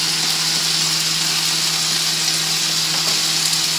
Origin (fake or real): real